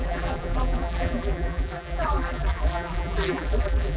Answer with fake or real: fake